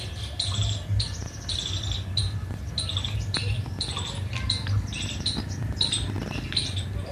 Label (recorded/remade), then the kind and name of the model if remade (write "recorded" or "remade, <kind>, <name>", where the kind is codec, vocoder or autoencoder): recorded